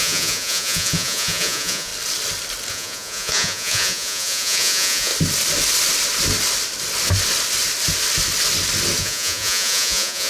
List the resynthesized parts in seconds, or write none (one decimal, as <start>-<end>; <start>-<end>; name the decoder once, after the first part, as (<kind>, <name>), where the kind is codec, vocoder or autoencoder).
0.0-1.9 (vocoder, Vocos); 2.7-5.1; 9.0-10.3